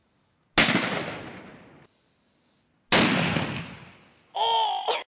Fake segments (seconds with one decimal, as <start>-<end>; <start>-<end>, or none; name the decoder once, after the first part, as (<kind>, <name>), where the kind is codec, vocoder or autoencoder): none